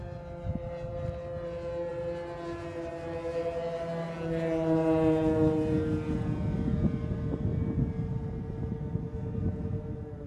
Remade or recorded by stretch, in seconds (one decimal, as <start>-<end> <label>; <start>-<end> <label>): 0.0-10.3 recorded